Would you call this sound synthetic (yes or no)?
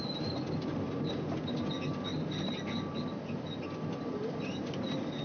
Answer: no